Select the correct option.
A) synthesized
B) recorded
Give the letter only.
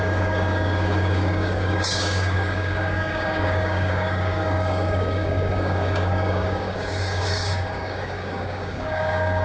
A